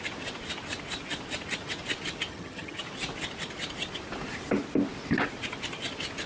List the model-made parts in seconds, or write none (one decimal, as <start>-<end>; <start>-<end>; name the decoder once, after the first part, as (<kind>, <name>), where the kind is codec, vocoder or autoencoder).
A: 2.3-2.8 (vocoder, HiFi-GAN)